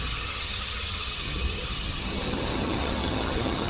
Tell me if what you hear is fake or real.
fake